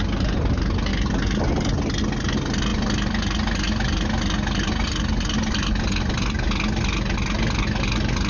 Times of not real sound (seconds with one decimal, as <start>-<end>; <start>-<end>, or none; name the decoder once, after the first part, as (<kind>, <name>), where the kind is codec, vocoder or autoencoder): none